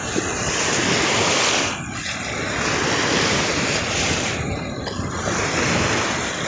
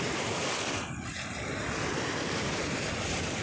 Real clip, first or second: first